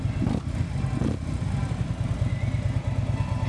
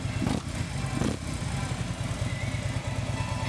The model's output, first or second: first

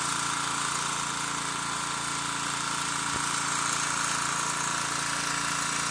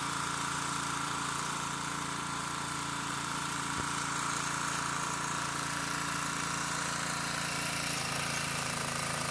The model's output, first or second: second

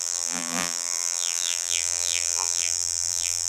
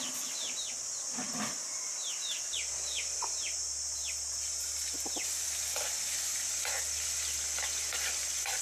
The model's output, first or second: first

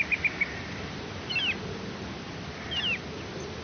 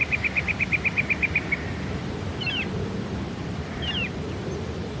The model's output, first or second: second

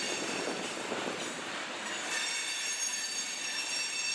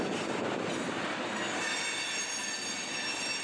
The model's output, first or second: first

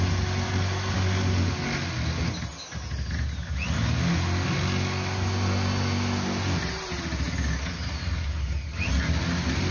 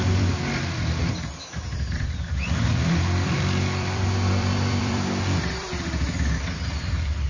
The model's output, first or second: second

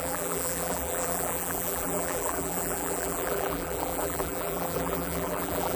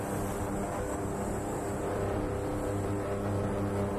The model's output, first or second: first